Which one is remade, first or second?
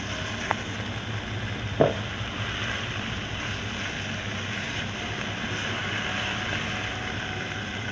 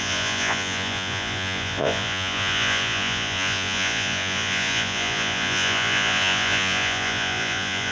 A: second